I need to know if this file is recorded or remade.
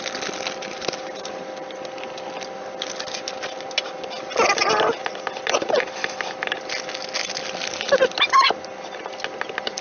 recorded